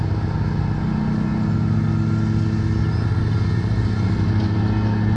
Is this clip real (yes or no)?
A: yes